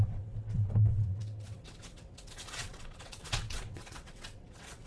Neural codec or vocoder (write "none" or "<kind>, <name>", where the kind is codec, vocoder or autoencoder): vocoder, WaveNeXt